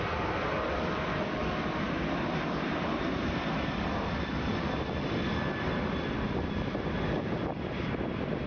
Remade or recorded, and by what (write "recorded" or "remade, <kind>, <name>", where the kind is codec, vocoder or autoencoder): recorded